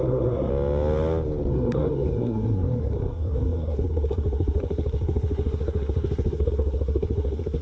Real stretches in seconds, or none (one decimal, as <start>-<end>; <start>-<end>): 0.5-1.5